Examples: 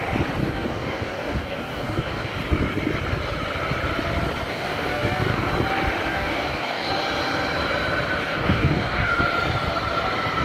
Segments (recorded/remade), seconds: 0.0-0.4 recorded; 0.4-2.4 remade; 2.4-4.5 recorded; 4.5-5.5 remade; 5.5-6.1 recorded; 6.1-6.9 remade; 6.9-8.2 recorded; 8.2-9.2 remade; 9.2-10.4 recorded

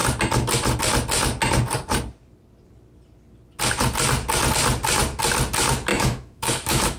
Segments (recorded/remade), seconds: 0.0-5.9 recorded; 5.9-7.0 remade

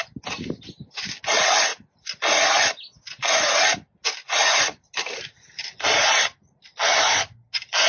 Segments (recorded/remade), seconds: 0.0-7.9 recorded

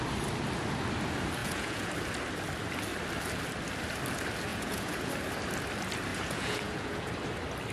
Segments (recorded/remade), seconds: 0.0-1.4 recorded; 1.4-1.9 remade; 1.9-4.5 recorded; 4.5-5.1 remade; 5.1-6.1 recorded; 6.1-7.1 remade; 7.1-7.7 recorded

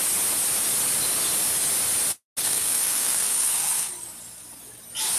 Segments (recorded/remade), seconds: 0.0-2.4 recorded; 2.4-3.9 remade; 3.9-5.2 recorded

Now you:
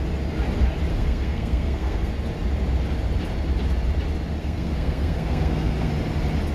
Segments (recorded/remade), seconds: 0.0-0.9 recorded; 0.9-2.1 remade; 2.1-4.3 recorded; 4.3-5.9 remade; 5.9-6.5 recorded